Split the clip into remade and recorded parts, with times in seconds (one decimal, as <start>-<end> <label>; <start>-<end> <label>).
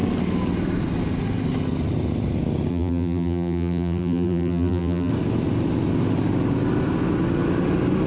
0.0-2.7 recorded; 2.7-5.1 remade; 5.1-8.1 recorded